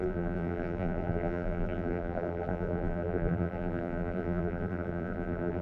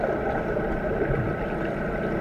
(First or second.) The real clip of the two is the second